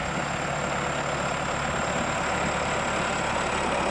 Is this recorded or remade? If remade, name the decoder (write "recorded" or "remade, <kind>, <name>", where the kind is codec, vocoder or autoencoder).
recorded